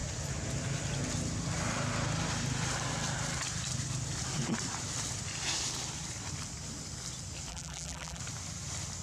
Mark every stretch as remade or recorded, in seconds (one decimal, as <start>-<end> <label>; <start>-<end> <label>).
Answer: 0.0-7.5 recorded; 7.5-8.2 remade; 8.2-9.0 recorded